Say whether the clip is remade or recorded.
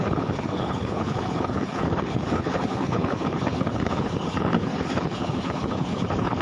remade